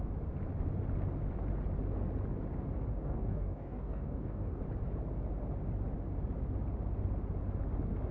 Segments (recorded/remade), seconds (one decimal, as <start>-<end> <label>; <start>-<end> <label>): 0.0-2.9 recorded; 2.9-4.6 remade; 4.6-8.1 recorded